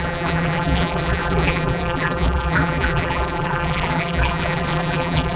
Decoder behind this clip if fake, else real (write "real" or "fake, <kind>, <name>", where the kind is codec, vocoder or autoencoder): fake, vocoder, BigVGAN v2